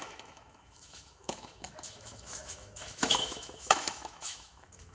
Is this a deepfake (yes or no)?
yes